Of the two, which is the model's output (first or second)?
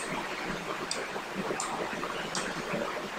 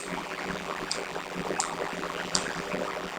second